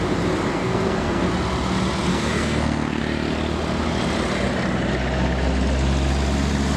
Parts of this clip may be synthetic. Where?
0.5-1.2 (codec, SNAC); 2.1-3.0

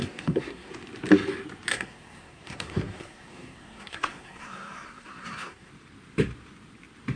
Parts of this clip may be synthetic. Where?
0.0-0.7 (codec, SNAC); 1.7-5.7

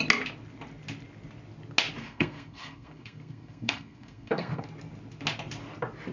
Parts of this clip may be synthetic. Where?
2.0-4.6 (codec, SNAC)

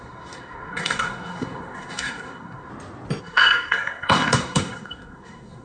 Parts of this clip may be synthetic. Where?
0.0-2.7 (codec, SNAC); 3.2-5.6

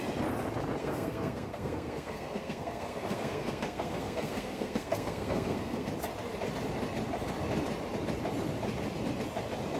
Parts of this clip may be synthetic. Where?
0.8-5.9 (codec, SNAC)